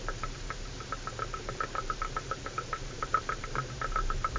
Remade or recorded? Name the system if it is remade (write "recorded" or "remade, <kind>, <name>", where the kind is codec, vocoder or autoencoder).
remade, vocoder, BigVGAN v2